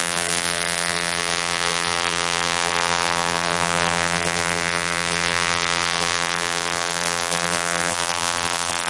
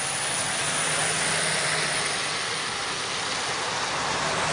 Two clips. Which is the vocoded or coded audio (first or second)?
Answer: first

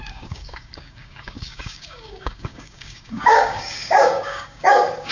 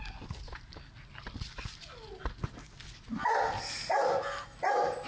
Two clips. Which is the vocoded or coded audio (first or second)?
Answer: first